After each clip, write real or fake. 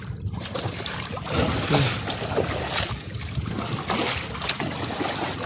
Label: real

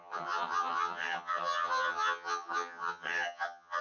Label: fake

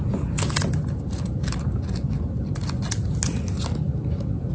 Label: real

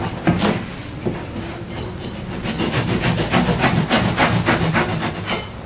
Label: real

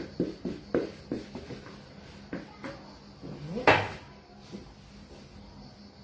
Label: real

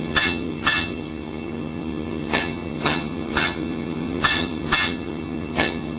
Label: fake